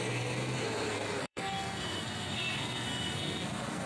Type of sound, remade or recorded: remade